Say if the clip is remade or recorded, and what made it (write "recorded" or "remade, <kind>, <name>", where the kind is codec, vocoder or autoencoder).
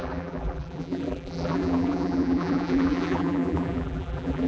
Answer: remade, vocoder, BigVGAN v2